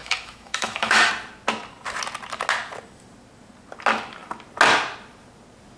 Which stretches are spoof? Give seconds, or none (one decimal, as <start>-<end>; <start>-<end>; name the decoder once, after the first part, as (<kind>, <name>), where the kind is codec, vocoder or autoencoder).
0.0-1.1 (autoencoder, DAC-VAE)